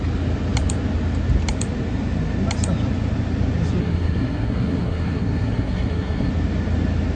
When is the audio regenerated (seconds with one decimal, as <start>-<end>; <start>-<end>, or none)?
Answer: 3.8-6.3

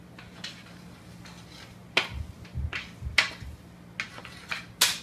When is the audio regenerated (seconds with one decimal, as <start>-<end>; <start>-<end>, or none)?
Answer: none

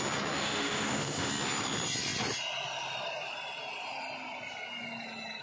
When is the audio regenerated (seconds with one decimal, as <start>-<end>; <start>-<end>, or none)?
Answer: 0.4-1.3

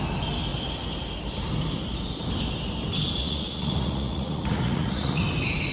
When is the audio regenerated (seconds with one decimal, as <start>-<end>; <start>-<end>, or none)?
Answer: 3.2-5.2

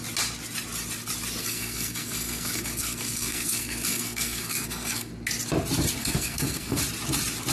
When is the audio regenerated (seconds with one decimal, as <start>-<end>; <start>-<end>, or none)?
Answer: 1.4-5.1; 6.0-6.8